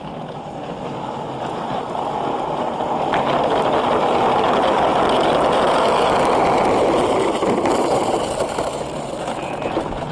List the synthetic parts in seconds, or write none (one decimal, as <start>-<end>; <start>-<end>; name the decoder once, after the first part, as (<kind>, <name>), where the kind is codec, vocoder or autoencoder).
none